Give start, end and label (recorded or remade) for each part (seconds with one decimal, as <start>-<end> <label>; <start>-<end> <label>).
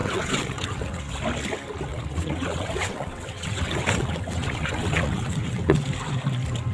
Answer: 0.0-1.0 remade; 1.0-1.9 recorded; 1.9-5.9 remade; 5.9-6.7 recorded